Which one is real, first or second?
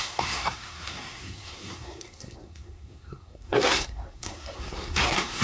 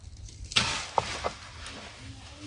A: second